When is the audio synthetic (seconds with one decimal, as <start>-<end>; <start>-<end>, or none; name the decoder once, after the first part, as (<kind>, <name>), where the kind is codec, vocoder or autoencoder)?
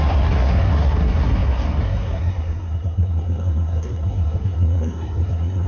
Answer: 0.0-5.7 (codec, SNAC)